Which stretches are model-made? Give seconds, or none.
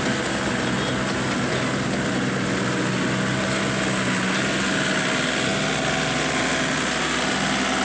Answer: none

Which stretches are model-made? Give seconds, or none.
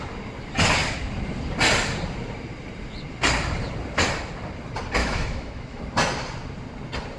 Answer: 5.0-5.8 (autoencoder, DAC-VAE)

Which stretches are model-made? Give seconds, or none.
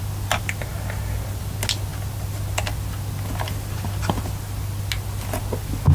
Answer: none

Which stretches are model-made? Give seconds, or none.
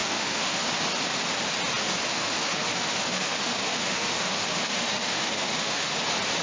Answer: 0.0-0.6 (autoencoder, DAC-VAE); 2.1-5.9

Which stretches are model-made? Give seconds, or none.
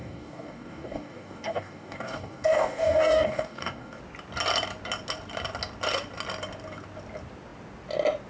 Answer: 0.0-4.0 (codec, DAC)